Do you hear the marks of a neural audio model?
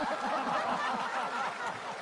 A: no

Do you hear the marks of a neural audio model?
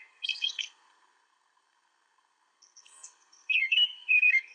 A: yes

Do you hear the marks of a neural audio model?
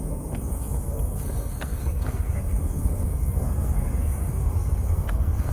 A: yes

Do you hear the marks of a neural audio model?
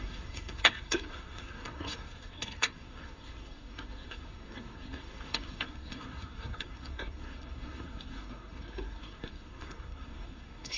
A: yes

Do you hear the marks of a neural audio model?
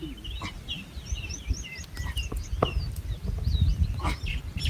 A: no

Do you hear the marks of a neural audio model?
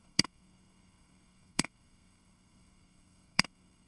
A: yes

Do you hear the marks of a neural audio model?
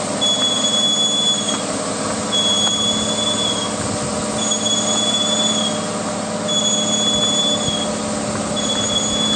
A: no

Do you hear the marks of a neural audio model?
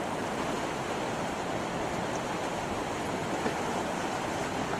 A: no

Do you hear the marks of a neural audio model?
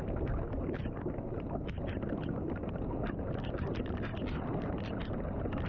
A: no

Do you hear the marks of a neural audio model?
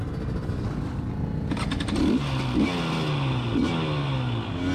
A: no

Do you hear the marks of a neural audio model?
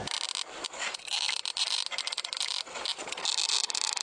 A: no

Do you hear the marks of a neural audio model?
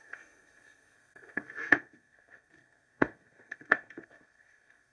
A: yes